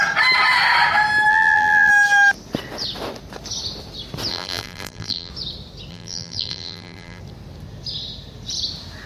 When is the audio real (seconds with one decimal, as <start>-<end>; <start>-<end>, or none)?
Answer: 0.0-1.3; 1.9-4.3; 5.3-5.9; 7.2-9.1